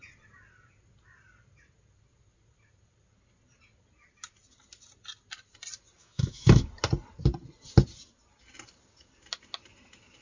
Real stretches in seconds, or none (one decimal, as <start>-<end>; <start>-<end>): 0.0-6.0; 6.7-10.2